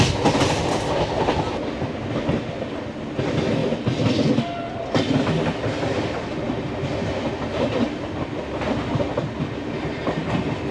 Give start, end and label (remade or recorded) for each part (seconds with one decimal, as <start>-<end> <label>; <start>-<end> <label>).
0.0-10.7 recorded